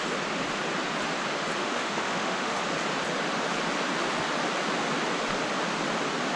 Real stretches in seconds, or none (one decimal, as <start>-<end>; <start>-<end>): 0.0-1.6; 2.6-6.4